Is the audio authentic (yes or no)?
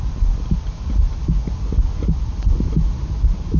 yes